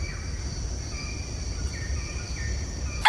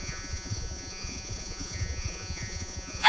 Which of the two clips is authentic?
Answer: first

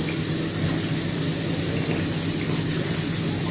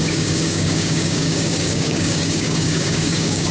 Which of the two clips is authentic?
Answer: first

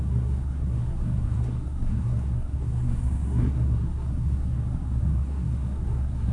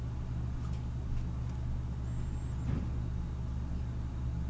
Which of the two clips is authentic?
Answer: second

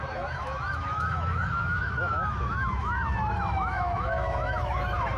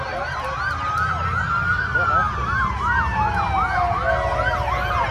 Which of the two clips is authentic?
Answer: second